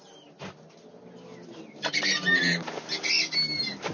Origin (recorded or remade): recorded